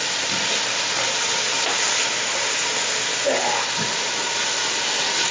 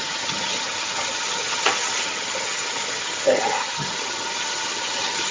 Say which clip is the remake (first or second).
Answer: second